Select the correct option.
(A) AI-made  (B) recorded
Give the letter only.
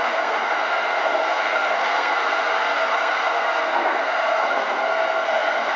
A